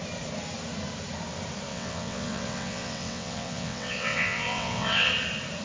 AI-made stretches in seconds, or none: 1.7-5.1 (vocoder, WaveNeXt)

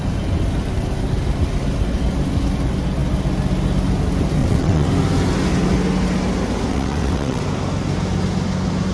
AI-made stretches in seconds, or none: 4.4-4.9 (vocoder, WaveNeXt); 6.7-7.4